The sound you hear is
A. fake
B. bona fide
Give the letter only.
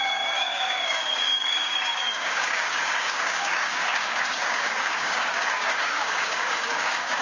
A